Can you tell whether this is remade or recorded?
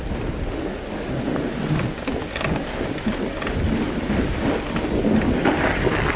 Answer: recorded